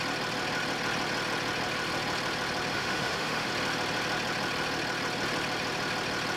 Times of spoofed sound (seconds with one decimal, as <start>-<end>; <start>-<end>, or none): 2.7-3.5